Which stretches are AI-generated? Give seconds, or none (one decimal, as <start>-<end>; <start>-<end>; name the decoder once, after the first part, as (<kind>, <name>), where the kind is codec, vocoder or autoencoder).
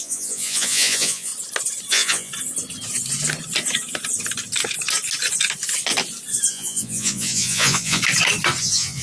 0.0-1.3 (vocoder, Vocos); 1.9-2.3; 6.5-8.0; 8.6-9.0